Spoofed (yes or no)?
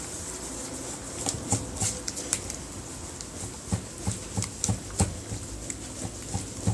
no